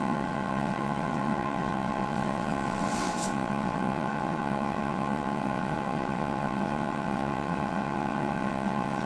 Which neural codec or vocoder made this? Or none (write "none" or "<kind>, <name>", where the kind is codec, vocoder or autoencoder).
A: vocoder, WaveNeXt